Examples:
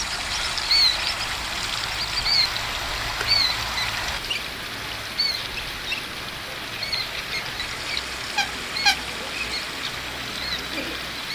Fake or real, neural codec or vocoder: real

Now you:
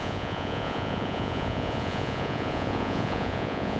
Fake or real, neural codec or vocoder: fake, vocoder, Vocos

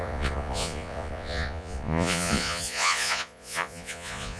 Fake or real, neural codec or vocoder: fake, vocoder, Vocos